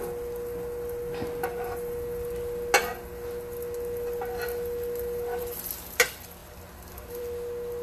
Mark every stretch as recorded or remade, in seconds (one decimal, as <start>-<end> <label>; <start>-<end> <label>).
0.0-7.8 recorded